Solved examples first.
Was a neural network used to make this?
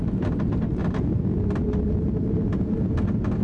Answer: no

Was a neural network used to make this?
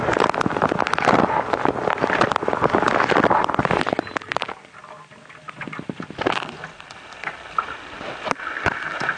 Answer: no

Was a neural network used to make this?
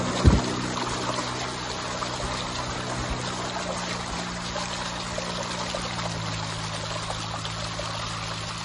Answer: no